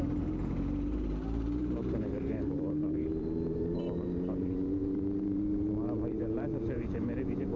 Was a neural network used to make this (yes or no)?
yes